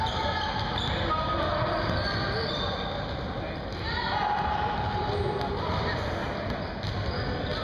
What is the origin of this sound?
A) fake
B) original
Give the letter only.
B